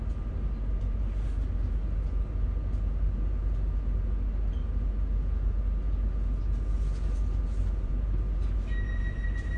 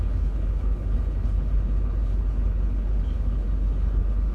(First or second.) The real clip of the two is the first